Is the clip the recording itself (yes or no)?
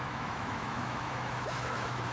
no